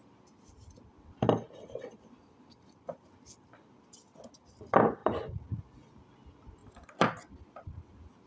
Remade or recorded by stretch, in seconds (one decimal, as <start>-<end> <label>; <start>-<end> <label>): 0.0-8.3 recorded